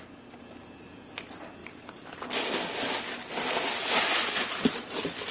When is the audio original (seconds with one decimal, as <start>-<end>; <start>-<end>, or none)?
0.0-5.3